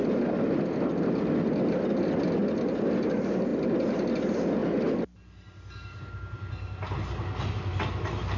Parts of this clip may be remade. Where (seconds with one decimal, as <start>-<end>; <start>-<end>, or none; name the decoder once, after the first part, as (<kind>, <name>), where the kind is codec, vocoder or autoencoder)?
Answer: none